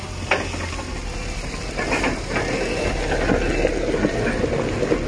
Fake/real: real